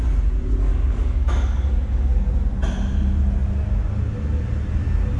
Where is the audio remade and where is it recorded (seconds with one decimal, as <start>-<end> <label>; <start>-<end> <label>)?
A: 0.0-0.7 recorded; 0.7-2.3 remade; 2.3-5.2 recorded